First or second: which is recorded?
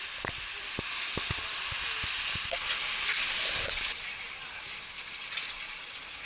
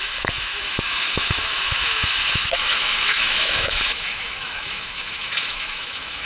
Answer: first